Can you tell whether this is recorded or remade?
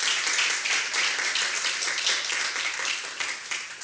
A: recorded